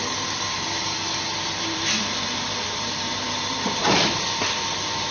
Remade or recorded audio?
remade